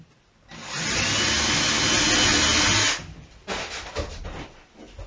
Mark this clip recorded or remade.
recorded